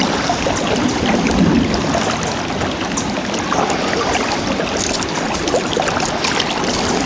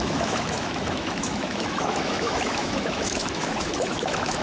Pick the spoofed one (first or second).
second